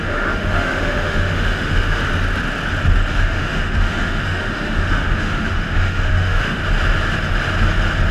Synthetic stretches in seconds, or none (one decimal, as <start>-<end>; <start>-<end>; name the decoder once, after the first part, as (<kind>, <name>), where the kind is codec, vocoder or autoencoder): 0.0-2.0 (autoencoder, DAC-VAE); 3.1-6.6